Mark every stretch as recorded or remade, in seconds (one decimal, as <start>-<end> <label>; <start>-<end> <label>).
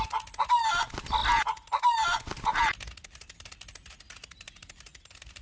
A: 0.0-5.4 recorded